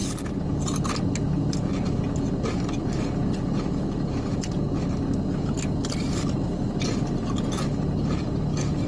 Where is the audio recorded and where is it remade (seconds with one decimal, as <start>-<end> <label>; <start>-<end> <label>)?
0.0-8.9 recorded